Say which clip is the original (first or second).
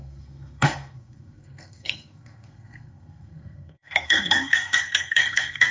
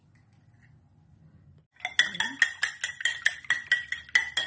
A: second